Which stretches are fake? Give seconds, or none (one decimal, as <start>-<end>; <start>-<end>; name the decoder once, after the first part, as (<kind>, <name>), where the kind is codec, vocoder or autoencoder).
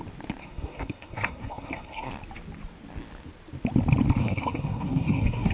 0.4-2.1 (codec, SNAC); 4.2-5.5